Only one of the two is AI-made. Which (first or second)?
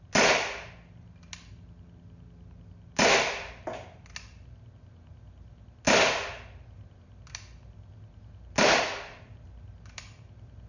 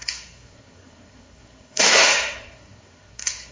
second